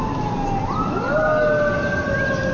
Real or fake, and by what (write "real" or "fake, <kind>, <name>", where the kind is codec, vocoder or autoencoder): real